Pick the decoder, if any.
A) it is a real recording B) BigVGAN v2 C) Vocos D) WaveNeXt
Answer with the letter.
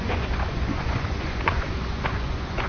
C